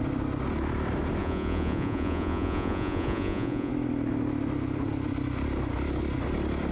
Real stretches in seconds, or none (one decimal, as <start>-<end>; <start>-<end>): 0.0-1.2; 3.7-6.7